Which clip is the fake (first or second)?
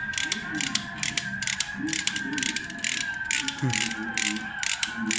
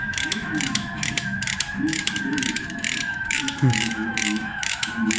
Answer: second